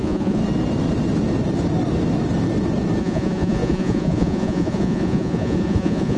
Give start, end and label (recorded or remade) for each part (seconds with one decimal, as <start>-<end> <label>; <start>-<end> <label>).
0.0-0.4 remade; 0.4-3.0 recorded; 3.0-6.2 remade